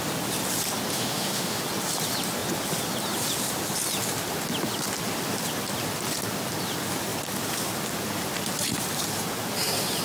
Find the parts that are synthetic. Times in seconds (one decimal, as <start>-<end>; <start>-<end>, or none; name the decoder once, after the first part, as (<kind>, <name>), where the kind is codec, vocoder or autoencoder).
0.9-1.6 (autoencoder, DAC-VAE)